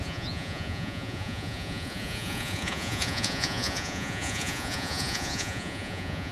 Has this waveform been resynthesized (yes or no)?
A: yes